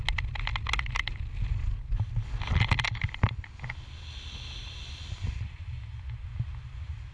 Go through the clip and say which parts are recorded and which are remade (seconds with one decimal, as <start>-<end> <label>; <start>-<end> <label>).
0.0-7.1 recorded